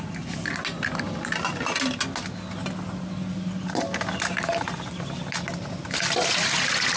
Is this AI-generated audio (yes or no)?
no